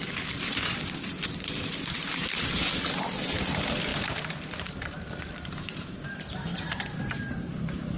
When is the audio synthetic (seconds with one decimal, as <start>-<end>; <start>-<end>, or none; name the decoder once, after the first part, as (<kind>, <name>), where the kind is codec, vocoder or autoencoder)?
0.0-8.0 (vocoder, BigVGAN v2)